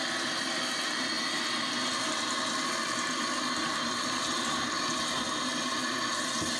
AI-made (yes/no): no